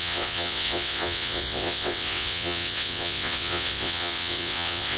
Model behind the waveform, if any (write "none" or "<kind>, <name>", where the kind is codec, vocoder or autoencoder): vocoder, WaveNeXt